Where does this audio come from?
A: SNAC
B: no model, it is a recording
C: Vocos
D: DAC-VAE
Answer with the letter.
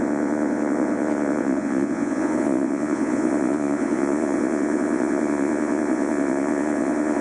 C